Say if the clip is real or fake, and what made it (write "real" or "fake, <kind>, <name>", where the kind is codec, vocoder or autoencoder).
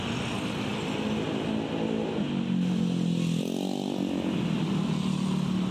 real